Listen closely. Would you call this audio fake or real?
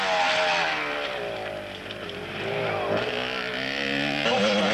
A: real